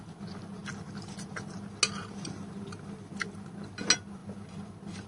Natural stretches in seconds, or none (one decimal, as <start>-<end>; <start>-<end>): 0.0-5.1